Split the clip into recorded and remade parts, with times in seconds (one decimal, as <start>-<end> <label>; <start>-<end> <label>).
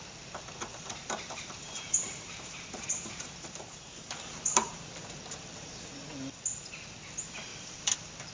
0.0-0.7 recorded; 0.7-5.2 remade; 5.2-8.3 recorded